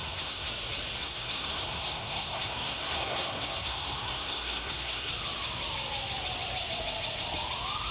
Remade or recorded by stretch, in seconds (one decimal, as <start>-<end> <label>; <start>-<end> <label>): 0.0-0.5 remade; 0.5-1.0 recorded; 1.0-5.1 remade; 5.1-7.9 recorded

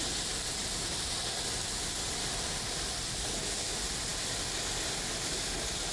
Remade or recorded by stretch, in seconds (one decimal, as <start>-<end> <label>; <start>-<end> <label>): 0.0-5.9 recorded

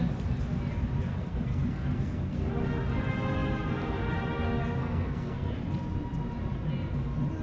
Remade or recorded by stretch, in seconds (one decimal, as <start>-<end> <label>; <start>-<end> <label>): 0.0-1.1 recorded; 1.1-2.5 remade; 2.5-4.8 recorded; 4.8-5.5 remade; 5.5-7.4 recorded

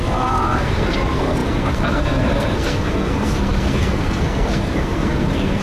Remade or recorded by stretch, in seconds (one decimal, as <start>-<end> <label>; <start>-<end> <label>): 0.0-5.6 remade